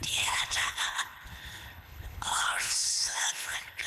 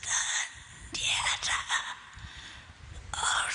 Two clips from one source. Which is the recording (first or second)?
second